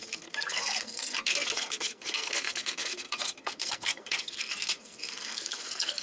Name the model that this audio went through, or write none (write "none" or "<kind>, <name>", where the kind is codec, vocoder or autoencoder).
codec, SNAC